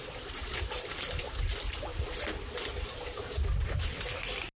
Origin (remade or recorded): recorded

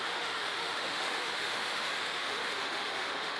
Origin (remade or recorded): remade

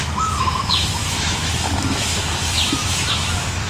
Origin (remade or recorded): remade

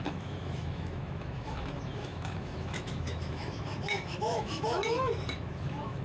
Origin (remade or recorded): remade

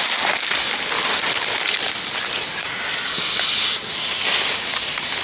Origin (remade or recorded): recorded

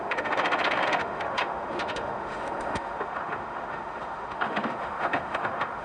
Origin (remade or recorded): remade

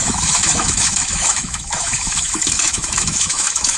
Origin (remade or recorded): remade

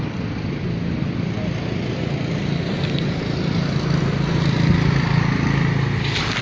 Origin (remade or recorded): recorded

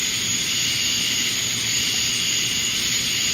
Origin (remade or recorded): recorded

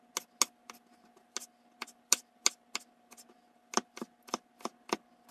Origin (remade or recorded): recorded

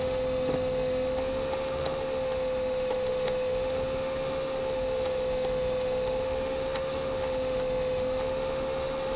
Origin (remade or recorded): remade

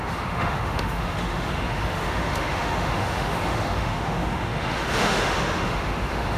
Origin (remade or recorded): remade